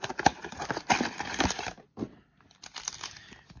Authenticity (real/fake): real